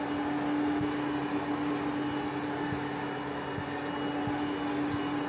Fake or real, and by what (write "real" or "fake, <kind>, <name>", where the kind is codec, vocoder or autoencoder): real